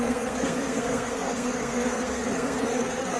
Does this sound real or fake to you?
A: fake